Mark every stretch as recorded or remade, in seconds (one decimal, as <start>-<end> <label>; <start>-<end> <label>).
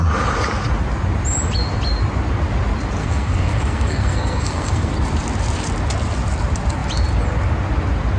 0.0-3.0 recorded; 3.0-4.9 remade; 4.9-8.2 recorded